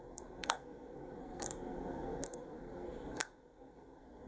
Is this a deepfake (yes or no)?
yes